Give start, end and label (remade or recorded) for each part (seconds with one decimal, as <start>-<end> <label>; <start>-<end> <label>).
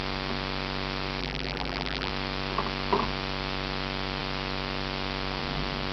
0.0-1.2 recorded; 1.2-2.1 remade; 2.1-5.9 recorded